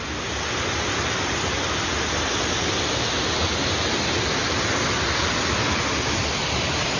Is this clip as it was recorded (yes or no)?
yes